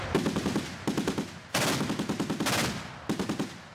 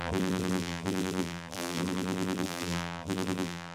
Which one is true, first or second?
first